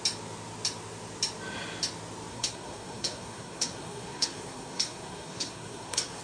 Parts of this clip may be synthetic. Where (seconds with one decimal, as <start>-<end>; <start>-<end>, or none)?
2.3-6.2